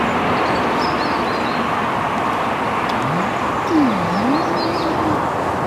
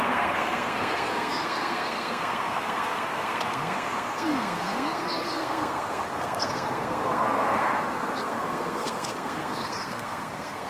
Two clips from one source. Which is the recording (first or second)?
first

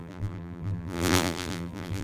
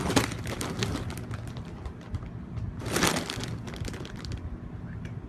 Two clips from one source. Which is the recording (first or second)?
second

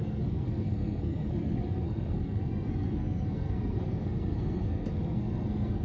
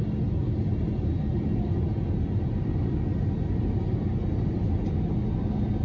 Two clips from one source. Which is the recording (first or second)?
second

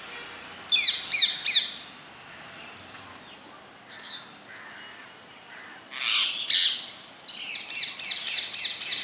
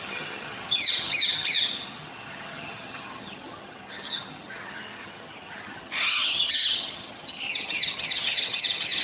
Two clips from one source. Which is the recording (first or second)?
first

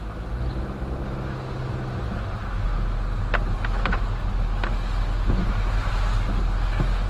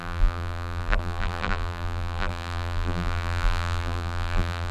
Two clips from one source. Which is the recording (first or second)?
first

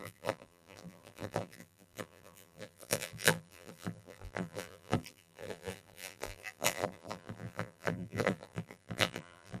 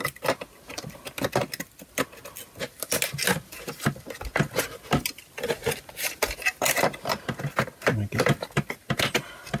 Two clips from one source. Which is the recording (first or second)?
second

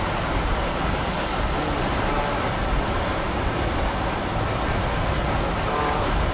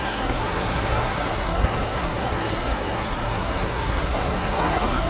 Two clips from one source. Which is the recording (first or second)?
first